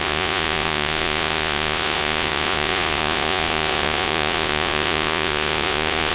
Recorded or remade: remade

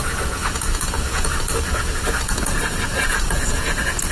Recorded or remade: remade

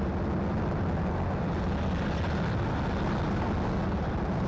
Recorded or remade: recorded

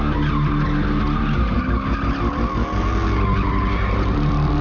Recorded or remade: recorded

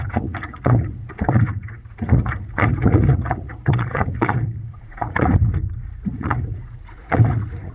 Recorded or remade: remade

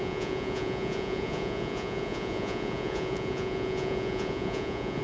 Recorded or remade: remade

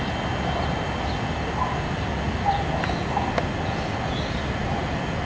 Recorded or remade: recorded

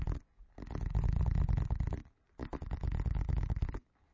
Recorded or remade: recorded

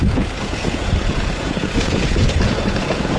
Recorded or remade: remade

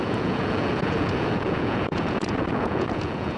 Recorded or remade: remade